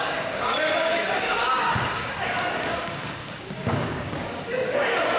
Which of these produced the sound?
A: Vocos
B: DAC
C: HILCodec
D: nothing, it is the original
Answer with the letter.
B